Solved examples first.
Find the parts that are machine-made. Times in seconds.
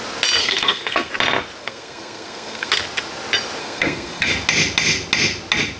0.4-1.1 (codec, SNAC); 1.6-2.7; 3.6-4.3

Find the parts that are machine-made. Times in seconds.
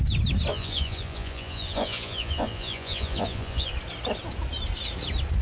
0.5-3.7 (vocoder, Vocos)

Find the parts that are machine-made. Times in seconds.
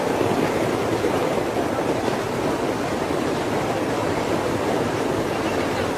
none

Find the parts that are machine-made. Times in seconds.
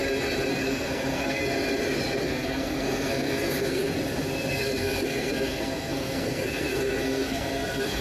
0.5-1.4 (codec, SNAC); 2.2-3.8; 4.5-8.0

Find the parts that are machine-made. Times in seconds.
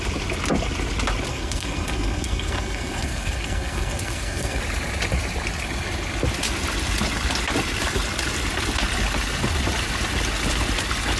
1.3-4.6 (codec, SNAC)